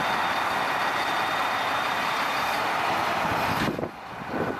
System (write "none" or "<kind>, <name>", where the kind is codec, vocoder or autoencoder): none